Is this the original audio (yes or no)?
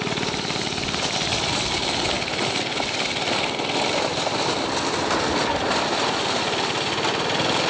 yes